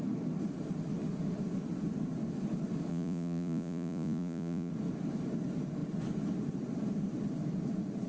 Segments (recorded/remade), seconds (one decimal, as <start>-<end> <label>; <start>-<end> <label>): 0.0-2.9 recorded; 2.9-4.7 remade; 4.7-8.1 recorded